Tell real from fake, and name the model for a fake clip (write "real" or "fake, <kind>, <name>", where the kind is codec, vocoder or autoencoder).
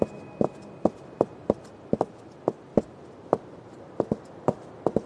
fake, vocoder, BigVGAN v2